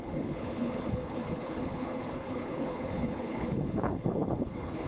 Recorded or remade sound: remade